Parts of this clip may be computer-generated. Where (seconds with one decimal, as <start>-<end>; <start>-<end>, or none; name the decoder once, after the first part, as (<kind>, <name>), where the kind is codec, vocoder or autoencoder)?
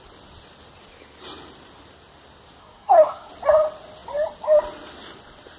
2.6-3.3 (codec, SNAC)